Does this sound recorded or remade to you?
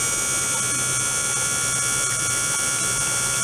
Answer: recorded